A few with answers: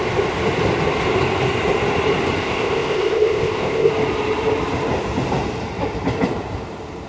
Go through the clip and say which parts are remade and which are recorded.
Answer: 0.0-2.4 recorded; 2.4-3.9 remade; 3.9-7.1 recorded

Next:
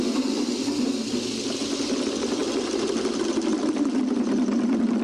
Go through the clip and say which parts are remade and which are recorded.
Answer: 0.0-5.0 recorded

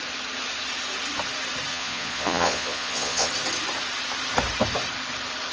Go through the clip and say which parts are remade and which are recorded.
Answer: 0.0-1.7 recorded; 1.7-3.3 remade; 3.3-5.5 recorded

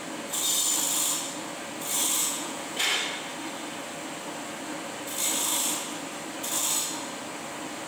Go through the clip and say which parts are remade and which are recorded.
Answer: 0.0-2.2 recorded; 2.2-2.8 remade; 2.8-7.9 recorded

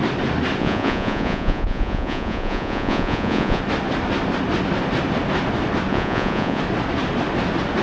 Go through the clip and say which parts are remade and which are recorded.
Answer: 0.0-0.6 recorded; 0.6-3.6 remade; 3.6-5.9 recorded; 5.9-6.6 remade; 6.6-7.8 recorded

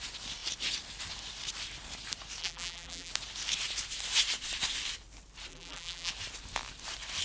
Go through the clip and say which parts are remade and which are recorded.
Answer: 0.0-2.4 recorded; 2.4-3.1 remade; 3.1-5.5 recorded; 5.5-6.1 remade; 6.1-7.2 recorded

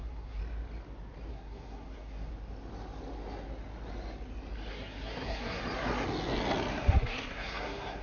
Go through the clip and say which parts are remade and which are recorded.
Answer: 0.0-0.4 remade; 0.4-1.3 recorded; 1.3-2.3 remade; 2.3-4.7 recorded; 4.7-5.6 remade; 5.6-6.7 recorded; 6.7-8.0 remade

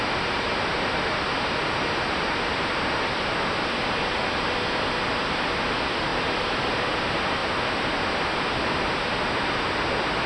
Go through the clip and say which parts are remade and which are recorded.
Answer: 0.0-10.3 recorded